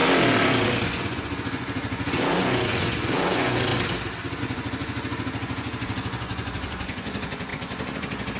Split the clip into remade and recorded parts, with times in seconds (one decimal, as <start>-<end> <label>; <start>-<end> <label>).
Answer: 0.0-0.9 recorded; 0.9-3.7 remade; 3.7-4.4 recorded; 4.4-8.4 remade